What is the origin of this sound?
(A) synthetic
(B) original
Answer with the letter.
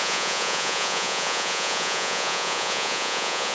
A